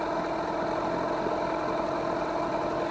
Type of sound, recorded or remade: recorded